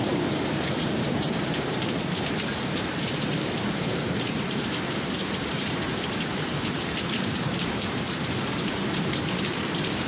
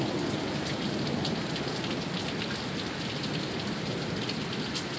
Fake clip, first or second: first